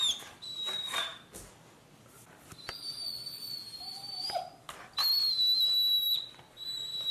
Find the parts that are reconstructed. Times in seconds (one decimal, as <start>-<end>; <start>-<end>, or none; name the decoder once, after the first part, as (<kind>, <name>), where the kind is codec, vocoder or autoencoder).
none